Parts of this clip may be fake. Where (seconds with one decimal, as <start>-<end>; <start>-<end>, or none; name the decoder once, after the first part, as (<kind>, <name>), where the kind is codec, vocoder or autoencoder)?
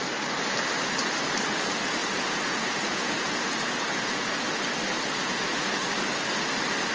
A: 2.0-4.3 (vocoder, Vocos); 5.2-5.9